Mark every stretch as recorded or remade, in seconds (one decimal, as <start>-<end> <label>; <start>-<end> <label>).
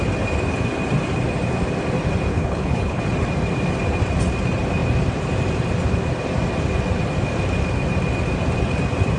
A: 0.0-2.3 recorded; 2.3-3.0 remade; 3.0-9.2 recorded